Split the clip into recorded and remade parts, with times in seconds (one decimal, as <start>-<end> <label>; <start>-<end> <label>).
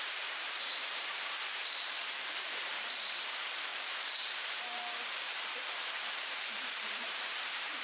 0.0-7.8 remade